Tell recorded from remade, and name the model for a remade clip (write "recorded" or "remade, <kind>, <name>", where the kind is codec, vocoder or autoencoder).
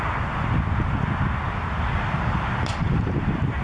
recorded